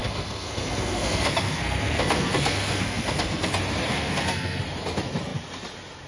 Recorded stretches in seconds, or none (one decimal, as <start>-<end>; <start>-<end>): 3.5-3.9; 4.6-6.1